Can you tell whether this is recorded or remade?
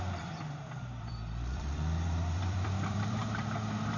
remade